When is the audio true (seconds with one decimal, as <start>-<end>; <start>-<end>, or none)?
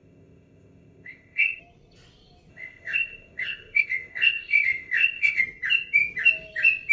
1.6-2.5; 5.4-6.9